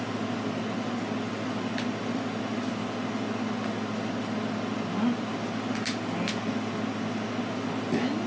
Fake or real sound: real